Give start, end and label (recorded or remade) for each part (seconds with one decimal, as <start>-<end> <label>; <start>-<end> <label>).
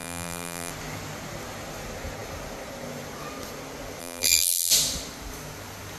0.0-0.7 remade; 0.7-4.0 recorded; 4.0-4.7 remade; 4.7-6.0 recorded